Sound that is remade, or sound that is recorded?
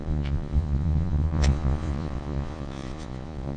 remade